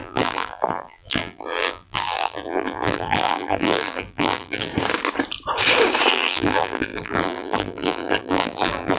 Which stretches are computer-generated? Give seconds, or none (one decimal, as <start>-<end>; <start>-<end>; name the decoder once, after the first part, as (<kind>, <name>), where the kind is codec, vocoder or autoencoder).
0.0-4.7 (vocoder, BigVGAN v2); 6.1-9.0